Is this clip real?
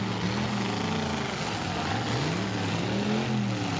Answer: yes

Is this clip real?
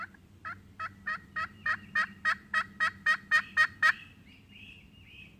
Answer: yes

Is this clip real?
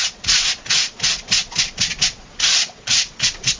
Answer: no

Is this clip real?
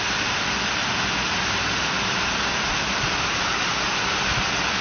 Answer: yes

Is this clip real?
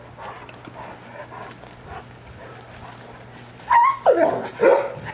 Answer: yes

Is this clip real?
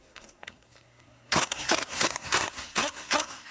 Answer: no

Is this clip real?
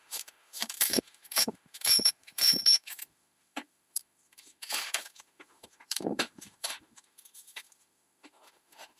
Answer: no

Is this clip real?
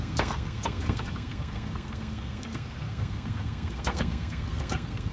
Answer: no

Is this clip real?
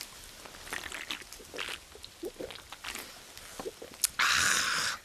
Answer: yes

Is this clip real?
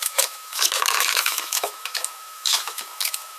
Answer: no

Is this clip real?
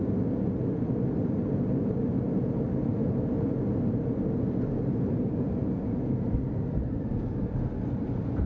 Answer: yes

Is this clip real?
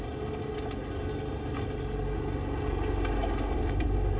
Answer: yes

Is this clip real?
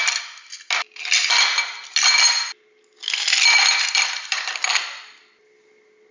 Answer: yes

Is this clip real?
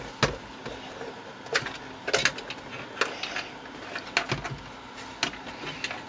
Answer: yes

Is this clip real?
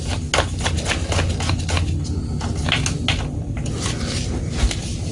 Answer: yes